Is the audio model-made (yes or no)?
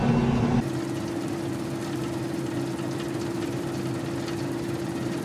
no